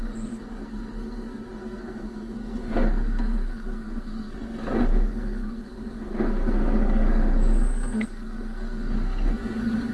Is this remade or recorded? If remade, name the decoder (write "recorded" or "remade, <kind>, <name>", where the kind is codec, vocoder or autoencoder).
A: remade, codec, SNAC